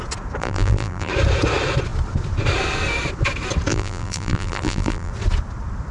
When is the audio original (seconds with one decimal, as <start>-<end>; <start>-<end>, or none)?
0.0-0.4; 1.1-3.7; 5.1-5.9